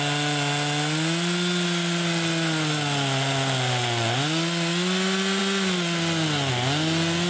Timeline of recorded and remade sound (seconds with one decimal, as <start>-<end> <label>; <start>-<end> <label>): 0.0-7.3 recorded